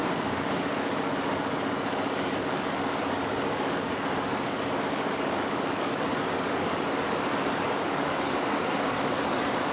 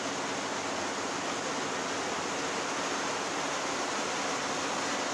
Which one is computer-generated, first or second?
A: first